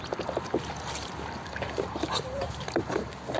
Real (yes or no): yes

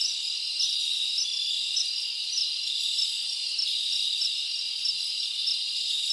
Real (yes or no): yes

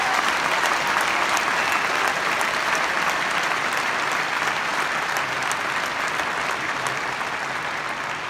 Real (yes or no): yes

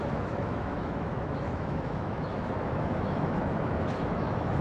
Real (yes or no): no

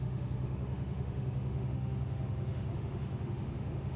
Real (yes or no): no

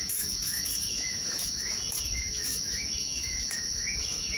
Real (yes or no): no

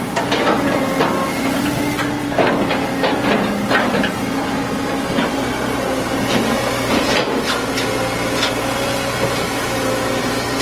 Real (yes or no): yes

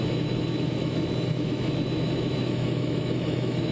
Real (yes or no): no